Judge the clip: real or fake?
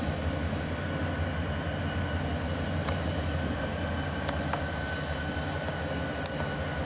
real